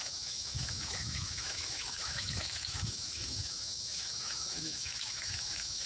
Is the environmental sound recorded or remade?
remade